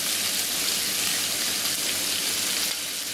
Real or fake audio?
real